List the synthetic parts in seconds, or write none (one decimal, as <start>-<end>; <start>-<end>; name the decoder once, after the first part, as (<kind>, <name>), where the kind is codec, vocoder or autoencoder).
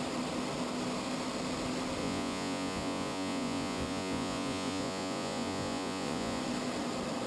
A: 2.0-6.4 (vocoder, Vocos)